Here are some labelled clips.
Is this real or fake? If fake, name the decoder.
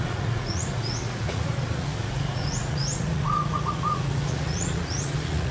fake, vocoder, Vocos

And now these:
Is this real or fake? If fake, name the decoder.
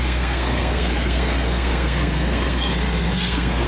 fake, codec, SNAC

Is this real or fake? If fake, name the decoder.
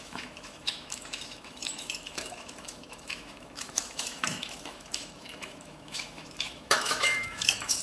fake, autoencoder, DAC-VAE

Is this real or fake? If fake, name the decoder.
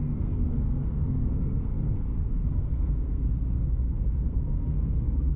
fake, codec, SNAC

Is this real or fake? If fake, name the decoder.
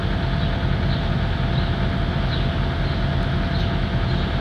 real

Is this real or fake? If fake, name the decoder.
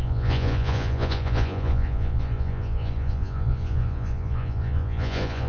fake, vocoder, Vocos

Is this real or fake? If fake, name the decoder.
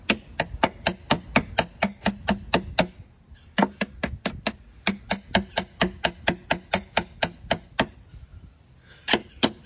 real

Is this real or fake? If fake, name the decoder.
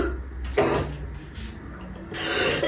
real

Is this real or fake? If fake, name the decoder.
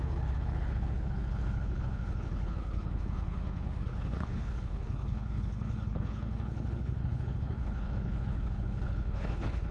fake, codec, HILCodec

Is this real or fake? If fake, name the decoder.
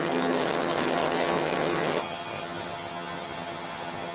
fake, vocoder, HiFi-GAN